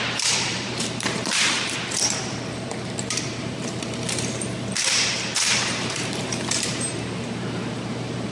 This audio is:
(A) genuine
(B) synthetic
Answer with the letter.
B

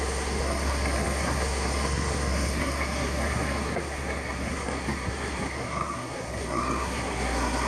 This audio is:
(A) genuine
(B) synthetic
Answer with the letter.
B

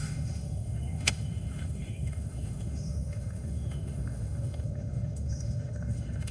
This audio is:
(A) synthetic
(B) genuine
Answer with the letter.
A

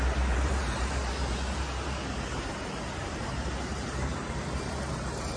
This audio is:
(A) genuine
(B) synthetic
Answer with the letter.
B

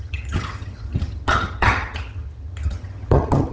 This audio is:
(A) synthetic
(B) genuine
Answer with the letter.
A